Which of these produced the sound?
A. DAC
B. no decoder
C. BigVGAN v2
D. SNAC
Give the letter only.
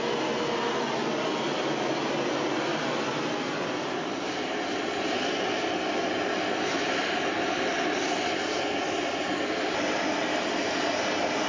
B